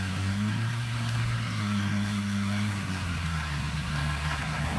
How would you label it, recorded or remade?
remade